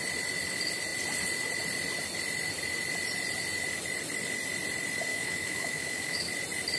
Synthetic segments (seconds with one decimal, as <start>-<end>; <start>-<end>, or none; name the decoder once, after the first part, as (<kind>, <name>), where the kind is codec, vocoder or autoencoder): 5.1-6.3 (autoencoder, DAC-VAE)